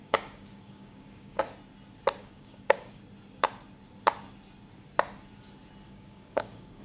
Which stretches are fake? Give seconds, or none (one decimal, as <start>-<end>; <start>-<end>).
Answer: 0.0-1.4; 2.2-3.0; 5.9-6.8